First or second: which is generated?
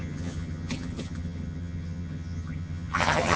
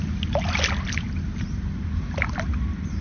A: first